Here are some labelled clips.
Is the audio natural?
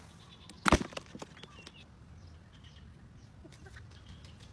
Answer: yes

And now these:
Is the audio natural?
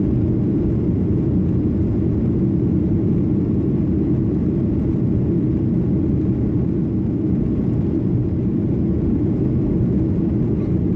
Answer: yes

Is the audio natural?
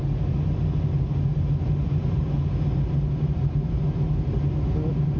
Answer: yes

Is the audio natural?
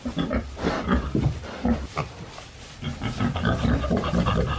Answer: yes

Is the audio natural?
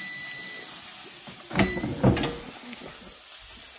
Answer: yes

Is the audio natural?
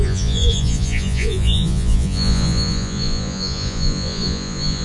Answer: no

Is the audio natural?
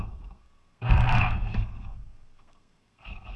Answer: no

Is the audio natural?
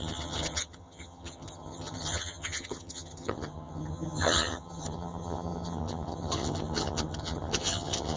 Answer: no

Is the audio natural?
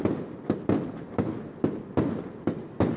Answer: yes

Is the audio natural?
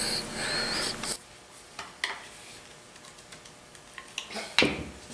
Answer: yes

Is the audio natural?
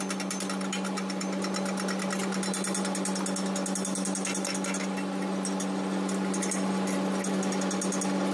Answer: yes